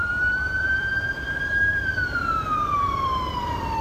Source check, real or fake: fake